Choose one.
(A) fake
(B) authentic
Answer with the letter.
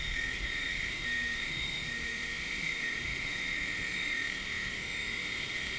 A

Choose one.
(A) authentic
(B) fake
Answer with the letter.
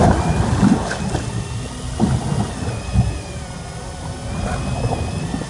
A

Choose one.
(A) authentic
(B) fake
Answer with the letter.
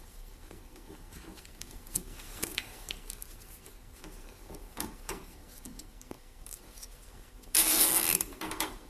B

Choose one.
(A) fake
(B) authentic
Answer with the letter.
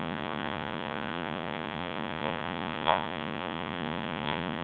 A